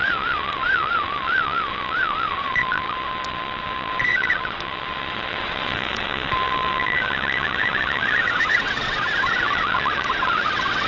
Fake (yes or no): yes